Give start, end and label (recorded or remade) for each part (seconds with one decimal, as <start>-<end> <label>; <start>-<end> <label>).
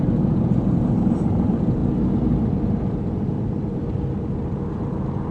0.0-1.8 remade; 1.8-5.3 recorded